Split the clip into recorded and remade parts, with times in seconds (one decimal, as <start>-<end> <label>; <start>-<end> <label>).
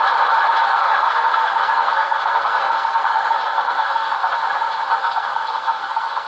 0.0-0.7 recorded; 0.7-4.3 remade; 4.3-5.0 recorded; 5.0-6.3 remade